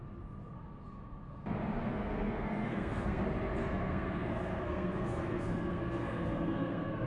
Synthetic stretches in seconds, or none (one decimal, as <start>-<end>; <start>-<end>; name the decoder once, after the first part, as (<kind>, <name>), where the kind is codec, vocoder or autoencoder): 1.8-3.2 (codec, SNAC); 3.6-7.1